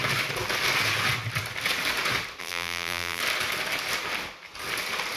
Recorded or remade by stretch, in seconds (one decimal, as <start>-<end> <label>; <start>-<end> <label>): 0.0-2.4 recorded; 2.4-3.2 remade; 3.2-5.2 recorded